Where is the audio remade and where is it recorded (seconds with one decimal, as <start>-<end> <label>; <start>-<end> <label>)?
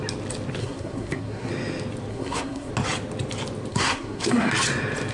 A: 0.0-0.6 recorded; 0.6-1.5 remade; 1.5-2.1 recorded; 2.1-2.7 remade; 2.7-3.7 recorded; 3.7-4.5 remade; 4.5-5.1 recorded